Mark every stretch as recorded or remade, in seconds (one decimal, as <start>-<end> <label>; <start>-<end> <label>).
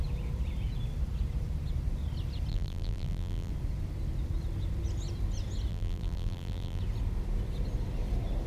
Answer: 0.0-2.5 recorded; 2.5-3.5 remade; 3.5-5.7 recorded; 5.7-6.8 remade; 6.8-8.5 recorded